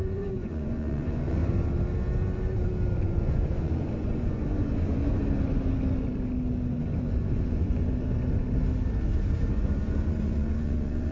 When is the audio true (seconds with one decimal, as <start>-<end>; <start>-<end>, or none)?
1.4-3.0; 5.0-6.8; 7.9-9.5